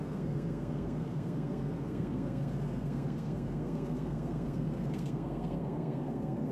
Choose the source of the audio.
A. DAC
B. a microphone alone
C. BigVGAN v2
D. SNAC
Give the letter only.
D